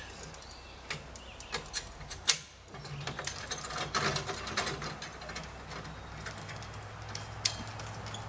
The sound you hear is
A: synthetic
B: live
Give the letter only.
B